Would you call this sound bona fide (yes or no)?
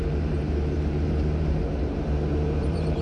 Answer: no